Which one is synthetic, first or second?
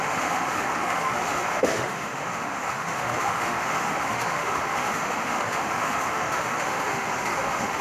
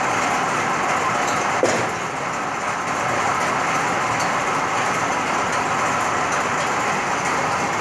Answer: first